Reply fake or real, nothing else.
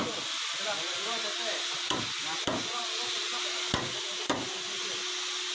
real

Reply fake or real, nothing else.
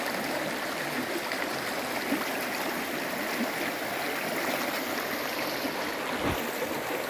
real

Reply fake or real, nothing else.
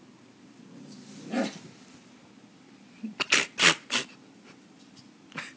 real